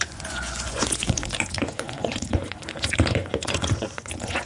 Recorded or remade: remade